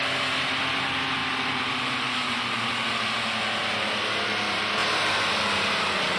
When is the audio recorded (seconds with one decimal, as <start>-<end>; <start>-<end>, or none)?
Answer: 0.0-6.2